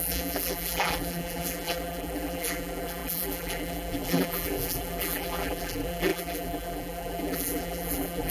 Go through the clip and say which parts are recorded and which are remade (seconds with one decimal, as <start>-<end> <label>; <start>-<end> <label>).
0.0-8.3 remade